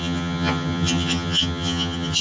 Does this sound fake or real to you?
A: fake